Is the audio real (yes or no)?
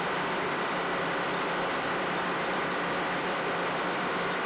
no